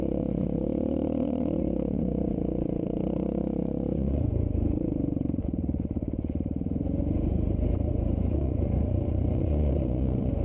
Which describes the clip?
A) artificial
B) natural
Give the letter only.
A